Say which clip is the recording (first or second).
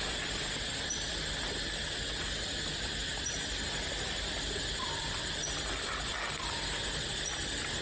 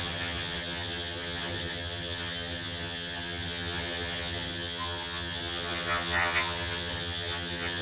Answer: first